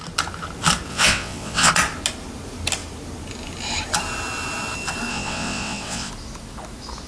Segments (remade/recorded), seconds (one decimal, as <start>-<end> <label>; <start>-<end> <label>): 0.0-0.9 recorded; 0.9-1.7 remade; 1.7-5.1 recorded; 5.1-6.1 remade; 6.1-7.1 recorded